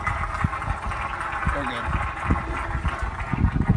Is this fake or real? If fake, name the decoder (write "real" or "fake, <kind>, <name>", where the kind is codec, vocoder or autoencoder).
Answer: real